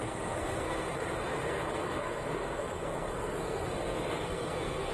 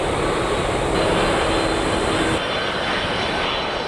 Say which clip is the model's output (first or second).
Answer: first